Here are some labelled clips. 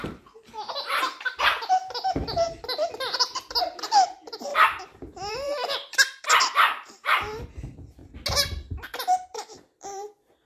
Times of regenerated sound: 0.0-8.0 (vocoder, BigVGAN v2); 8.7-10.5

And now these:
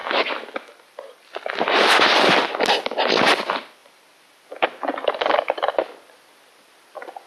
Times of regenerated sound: none

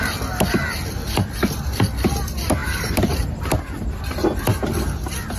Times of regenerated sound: 2.6-4.0 (vocoder, BigVGAN v2)

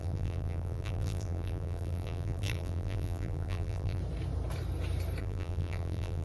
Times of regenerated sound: 0.0-4.0 (vocoder, BigVGAN v2); 5.2-6.2